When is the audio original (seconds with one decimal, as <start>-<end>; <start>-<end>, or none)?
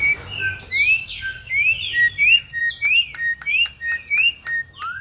0.0-1.0; 1.5-5.0